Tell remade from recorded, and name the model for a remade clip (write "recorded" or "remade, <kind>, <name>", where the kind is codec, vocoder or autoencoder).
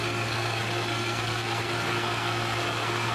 remade, codec, SNAC